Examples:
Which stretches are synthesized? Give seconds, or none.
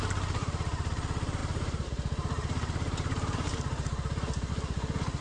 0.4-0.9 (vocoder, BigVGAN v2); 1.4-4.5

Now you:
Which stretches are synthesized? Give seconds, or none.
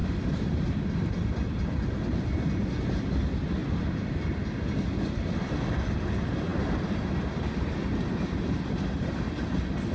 0.0-2.0 (vocoder, BigVGAN v2); 3.6-6.0; 6.5-8.4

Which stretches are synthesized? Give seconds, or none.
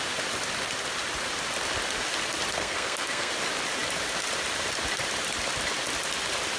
2.6-3.3 (codec, SNAC)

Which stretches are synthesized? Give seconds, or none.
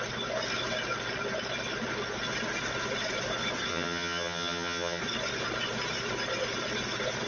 3.7-5.0 (vocoder, HiFi-GAN)